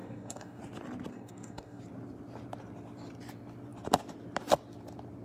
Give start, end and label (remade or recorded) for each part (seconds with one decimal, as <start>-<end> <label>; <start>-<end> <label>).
0.0-0.6 remade; 0.6-1.1 recorded; 1.1-1.8 remade; 1.8-5.2 recorded